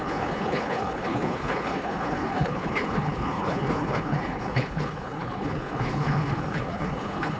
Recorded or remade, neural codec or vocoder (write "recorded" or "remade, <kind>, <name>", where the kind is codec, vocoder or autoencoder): remade, codec, HILCodec